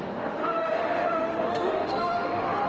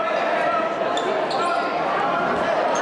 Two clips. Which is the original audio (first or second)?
second